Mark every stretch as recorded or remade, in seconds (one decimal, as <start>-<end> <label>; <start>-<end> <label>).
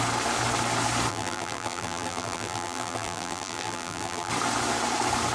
0.0-1.1 recorded; 1.1-4.3 remade; 4.3-5.3 recorded